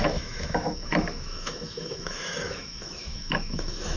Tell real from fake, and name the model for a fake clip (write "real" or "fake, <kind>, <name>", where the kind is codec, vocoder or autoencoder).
fake, autoencoder, DAC-VAE